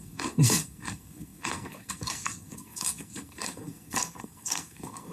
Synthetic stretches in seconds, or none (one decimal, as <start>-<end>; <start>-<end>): 0.0-5.1